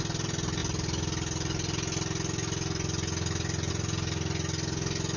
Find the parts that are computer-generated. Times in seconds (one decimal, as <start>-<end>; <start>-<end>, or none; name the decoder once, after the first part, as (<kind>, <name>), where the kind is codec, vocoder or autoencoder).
none